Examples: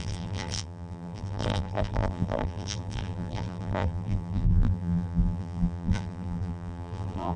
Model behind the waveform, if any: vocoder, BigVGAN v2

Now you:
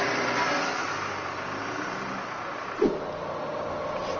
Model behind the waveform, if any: none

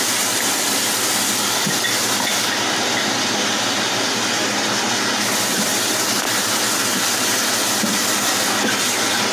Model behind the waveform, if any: none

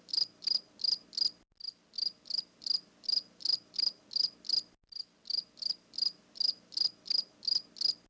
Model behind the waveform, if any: none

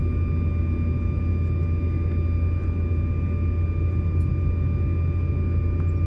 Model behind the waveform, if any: none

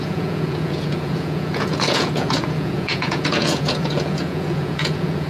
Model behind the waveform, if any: vocoder, Vocos